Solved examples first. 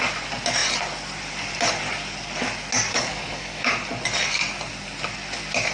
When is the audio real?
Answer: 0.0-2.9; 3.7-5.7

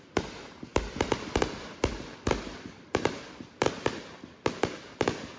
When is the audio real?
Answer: 0.0-0.7; 3.9-5.4

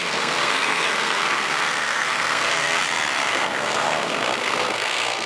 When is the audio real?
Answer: 2.8-3.3

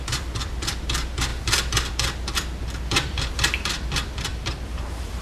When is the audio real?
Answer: none